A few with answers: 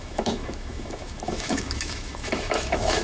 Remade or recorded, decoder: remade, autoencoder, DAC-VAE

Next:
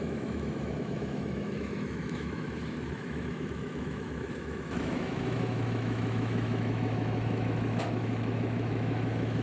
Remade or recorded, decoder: remade, autoencoder, DAC-VAE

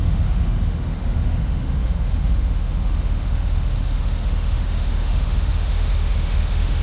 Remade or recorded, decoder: remade, autoencoder, DAC-VAE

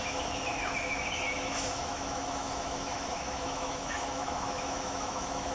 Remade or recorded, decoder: remade, autoencoder, DAC-VAE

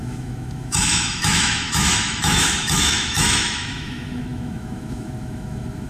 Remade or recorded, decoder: remade, autoencoder, DAC-VAE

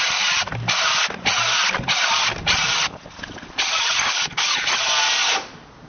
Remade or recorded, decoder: recorded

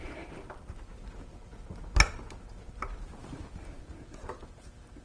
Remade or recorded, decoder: recorded